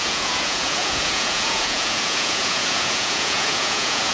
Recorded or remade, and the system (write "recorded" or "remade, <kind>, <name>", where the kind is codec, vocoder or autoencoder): remade, vocoder, Vocos